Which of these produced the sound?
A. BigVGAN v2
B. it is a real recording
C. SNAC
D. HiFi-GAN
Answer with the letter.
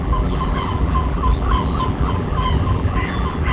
A